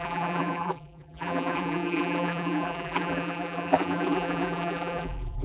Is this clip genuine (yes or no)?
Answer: no